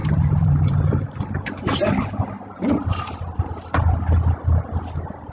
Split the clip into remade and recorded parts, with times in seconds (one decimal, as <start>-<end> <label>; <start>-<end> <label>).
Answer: 0.0-3.2 remade; 3.2-5.3 recorded